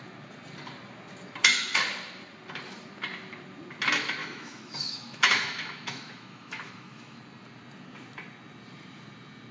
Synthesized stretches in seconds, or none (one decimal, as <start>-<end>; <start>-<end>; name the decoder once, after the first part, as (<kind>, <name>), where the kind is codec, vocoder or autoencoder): 4.2-7.2 (autoencoder, DAC-VAE)